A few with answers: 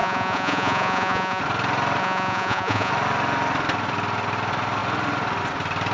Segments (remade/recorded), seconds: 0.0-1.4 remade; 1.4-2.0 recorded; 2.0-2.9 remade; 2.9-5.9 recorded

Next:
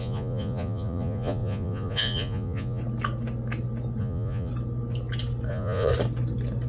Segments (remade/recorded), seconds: 0.0-2.8 remade; 2.8-4.0 recorded; 4.0-4.5 remade; 4.5-5.5 recorded; 5.5-5.9 remade; 5.9-6.7 recorded

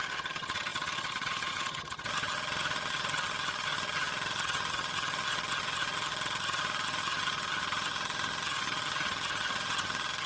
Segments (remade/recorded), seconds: 0.0-10.3 remade

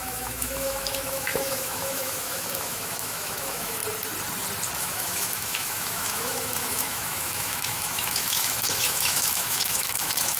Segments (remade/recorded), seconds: 0.0-3.8 remade; 3.8-4.8 recorded; 4.8-10.4 remade

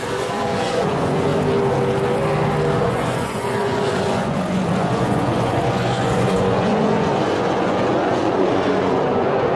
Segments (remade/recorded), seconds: 0.0-1.3 remade; 1.3-2.8 recorded; 2.8-9.6 remade

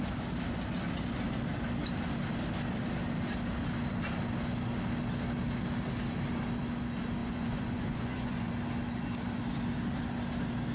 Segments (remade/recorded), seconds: 0.0-7.2 recorded; 7.2-8.5 remade; 8.5-10.7 recorded